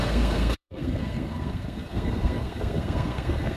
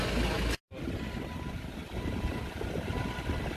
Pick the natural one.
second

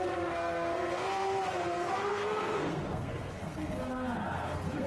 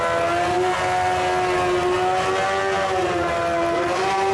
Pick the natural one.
second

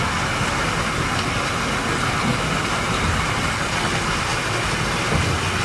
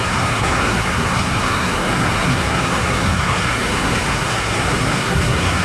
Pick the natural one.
first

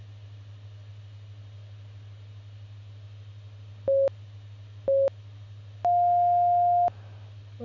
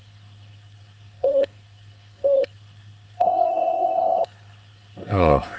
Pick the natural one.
first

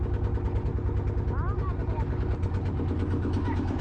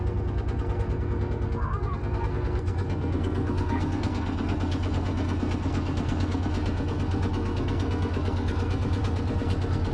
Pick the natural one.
first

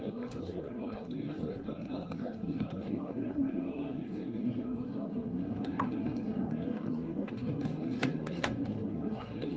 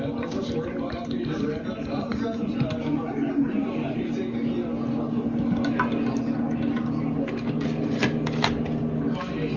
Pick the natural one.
second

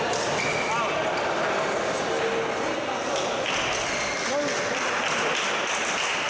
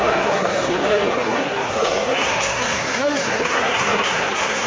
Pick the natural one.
first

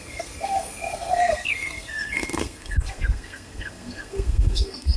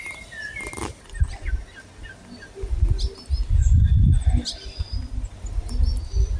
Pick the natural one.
second